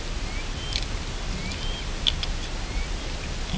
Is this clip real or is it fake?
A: real